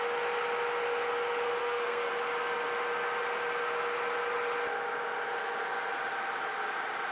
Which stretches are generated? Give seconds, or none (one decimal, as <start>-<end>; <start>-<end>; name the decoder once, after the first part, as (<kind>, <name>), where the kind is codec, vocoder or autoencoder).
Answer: 1.6-2.1 (codec, SNAC)

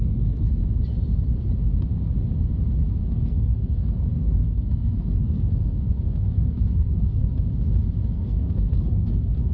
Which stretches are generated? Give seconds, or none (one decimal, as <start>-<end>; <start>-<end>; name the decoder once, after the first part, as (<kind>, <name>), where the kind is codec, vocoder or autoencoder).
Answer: 0.0-0.6 (codec, SNAC); 3.1-7.2; 8.1-9.5

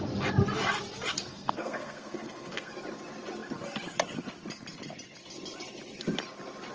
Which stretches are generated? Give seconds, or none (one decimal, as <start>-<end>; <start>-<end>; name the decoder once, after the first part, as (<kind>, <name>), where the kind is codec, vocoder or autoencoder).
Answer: 1.3-2.7 (codec, SNAC)